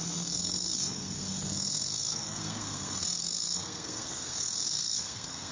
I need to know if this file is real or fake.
fake